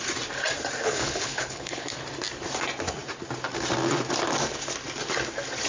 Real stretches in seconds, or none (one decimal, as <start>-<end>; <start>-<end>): 0.0-0.8; 2.0-5.7